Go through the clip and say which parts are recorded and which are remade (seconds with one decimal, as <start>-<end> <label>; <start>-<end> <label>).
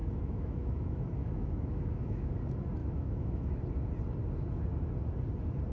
0.0-2.3 remade; 2.3-2.8 recorded; 2.8-3.6 remade; 3.6-5.7 recorded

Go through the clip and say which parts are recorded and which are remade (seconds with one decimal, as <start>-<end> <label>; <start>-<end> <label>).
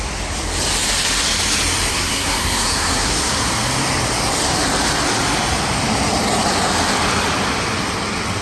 0.0-1.9 recorded; 1.9-3.3 remade; 3.3-8.4 recorded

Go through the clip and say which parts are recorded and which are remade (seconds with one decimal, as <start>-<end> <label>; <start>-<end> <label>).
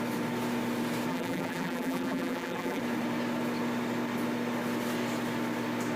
0.0-1.1 recorded; 1.1-2.8 remade; 2.8-6.0 recorded